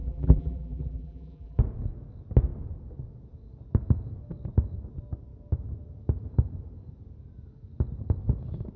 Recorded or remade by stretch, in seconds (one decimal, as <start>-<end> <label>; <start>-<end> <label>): 0.0-1.6 remade; 1.6-8.8 recorded